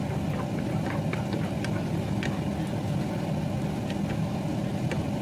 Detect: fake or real real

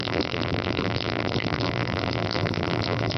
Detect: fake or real fake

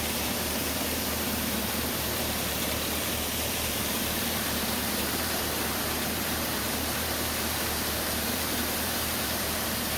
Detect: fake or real fake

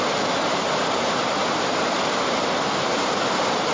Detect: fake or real fake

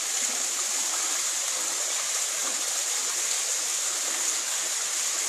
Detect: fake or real real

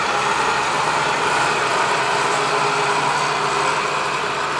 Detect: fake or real real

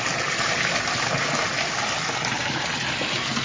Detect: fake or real real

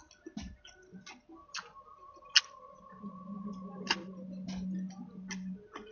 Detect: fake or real real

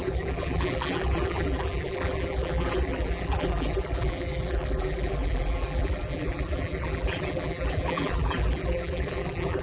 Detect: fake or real fake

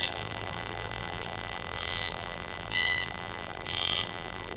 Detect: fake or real fake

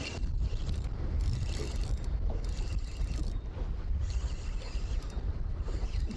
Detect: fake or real fake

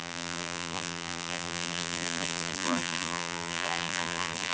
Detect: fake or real fake